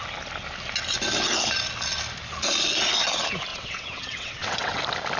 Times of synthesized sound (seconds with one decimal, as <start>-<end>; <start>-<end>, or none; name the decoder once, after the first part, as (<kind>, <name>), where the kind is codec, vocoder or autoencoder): 3.5-4.8 (vocoder, WaveNeXt)